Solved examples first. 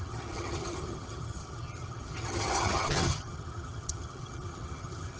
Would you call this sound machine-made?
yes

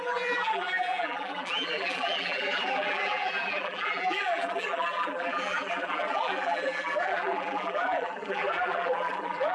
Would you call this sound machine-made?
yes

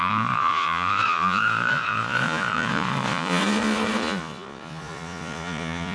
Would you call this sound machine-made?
yes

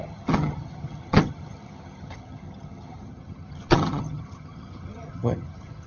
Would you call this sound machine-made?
yes